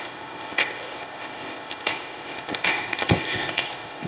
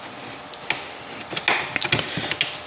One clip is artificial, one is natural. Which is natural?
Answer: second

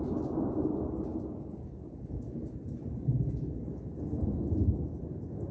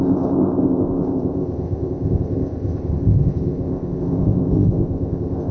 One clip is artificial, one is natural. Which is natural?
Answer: first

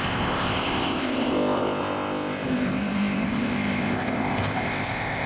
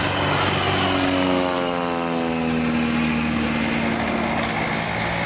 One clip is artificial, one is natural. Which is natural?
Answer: second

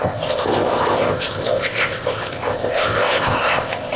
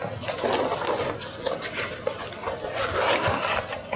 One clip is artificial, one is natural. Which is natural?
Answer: second